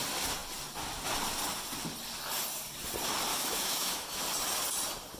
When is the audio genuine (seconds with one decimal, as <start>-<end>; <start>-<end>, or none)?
0.0-3.3; 4.2-5.2